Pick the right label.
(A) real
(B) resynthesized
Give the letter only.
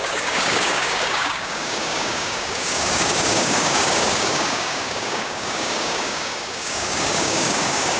B